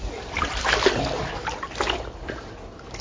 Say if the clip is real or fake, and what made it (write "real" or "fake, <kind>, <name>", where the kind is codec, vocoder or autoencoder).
real